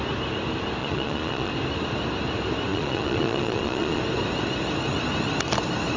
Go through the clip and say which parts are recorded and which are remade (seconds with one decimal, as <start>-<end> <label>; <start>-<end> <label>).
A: 0.0-0.8 recorded; 0.8-1.5 remade; 1.5-2.7 recorded; 2.7-4.0 remade; 4.0-6.0 recorded